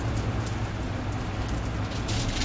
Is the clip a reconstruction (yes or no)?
no